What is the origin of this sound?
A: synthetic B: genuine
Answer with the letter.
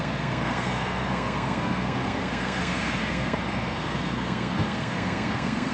A